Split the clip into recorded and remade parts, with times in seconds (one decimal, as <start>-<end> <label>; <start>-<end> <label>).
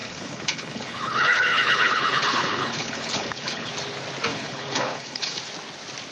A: 0.0-3.7 remade; 3.7-4.3 recorded; 4.3-5.4 remade; 5.4-6.1 recorded